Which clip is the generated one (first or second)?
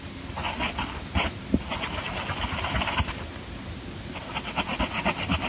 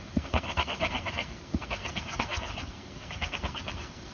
second